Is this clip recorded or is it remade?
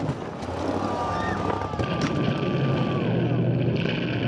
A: recorded